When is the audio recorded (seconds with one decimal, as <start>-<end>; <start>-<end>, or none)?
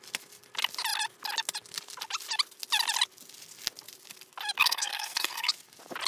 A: 0.0-4.6; 5.5-6.1